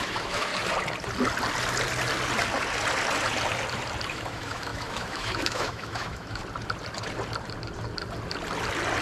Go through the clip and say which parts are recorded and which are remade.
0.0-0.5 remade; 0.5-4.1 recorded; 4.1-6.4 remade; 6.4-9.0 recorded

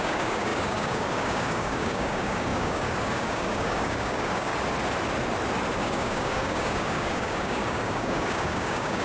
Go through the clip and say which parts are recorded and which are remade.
0.0-4.5 remade; 4.5-5.8 recorded; 5.8-9.0 remade

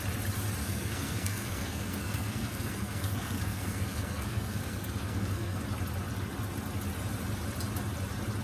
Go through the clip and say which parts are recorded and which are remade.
0.0-0.6 recorded; 0.6-5.6 remade; 5.6-8.4 recorded

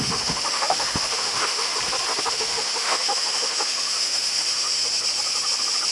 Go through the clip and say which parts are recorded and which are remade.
0.0-1.7 remade; 1.7-2.3 recorded; 2.3-4.8 remade; 4.8-5.9 recorded

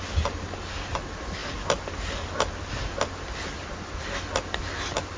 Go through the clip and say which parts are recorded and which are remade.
0.0-5.2 recorded

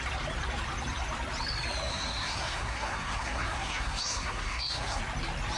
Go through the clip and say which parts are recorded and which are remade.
0.0-1.9 recorded; 1.9-5.0 remade; 5.0-5.6 recorded

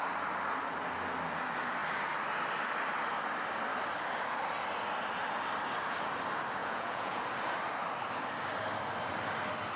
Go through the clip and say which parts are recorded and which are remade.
0.0-6.6 recorded; 6.6-7.2 remade; 7.2-9.8 recorded